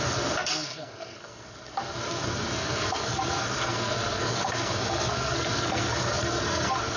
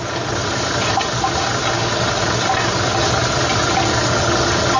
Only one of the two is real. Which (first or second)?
second